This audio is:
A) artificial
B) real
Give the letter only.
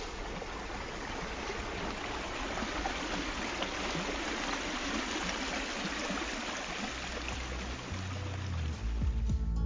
B